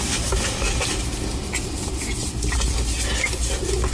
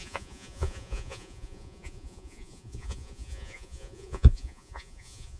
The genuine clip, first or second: first